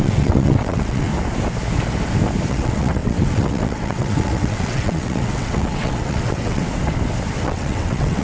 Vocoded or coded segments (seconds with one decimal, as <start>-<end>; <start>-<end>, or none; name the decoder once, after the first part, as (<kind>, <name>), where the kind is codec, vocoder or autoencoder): 0.0-1.1 (vocoder, WaveNeXt); 2.5-6.6; 7.4-8.2